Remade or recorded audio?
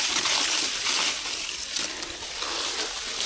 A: recorded